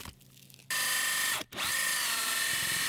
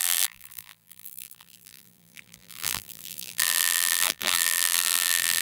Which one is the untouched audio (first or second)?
first